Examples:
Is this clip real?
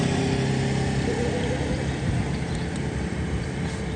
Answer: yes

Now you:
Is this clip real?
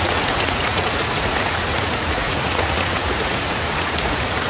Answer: no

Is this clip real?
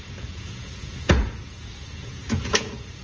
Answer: no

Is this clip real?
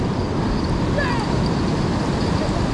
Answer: yes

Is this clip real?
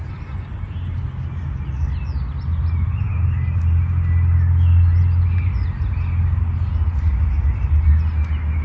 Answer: yes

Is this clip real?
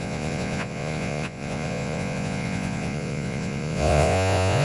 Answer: no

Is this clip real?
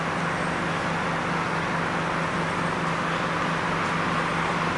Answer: yes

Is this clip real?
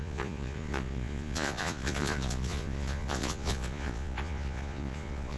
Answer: no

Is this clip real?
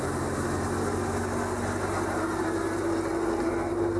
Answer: yes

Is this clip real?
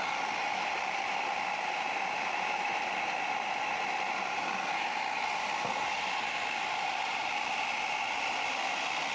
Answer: yes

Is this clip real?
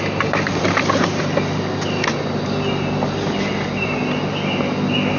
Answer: yes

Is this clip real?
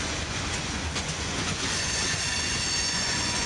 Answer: no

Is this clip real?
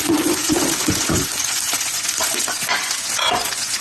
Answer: no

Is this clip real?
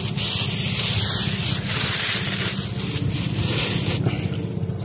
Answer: yes